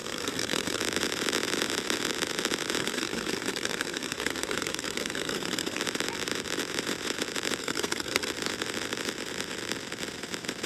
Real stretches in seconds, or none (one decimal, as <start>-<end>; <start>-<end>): 0.8-2.8; 5.8-7.6; 8.3-10.7